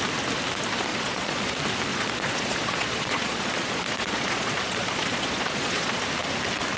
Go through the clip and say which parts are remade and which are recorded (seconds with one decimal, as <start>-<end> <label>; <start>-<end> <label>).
0.0-0.9 recorded; 0.9-1.5 remade; 1.5-1.9 recorded; 1.9-6.0 remade; 6.0-6.8 recorded